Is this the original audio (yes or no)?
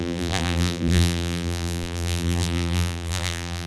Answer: no